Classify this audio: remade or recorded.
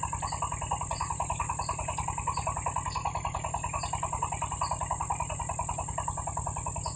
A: recorded